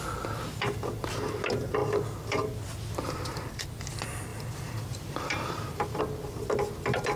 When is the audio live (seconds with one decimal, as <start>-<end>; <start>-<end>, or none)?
0.0-1.8; 2.5-4.3; 6.0-7.2